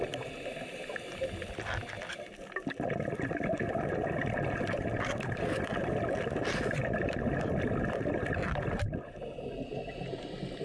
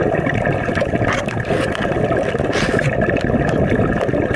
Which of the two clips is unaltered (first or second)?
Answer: first